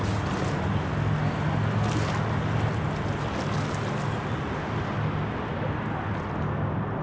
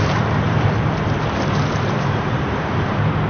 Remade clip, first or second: second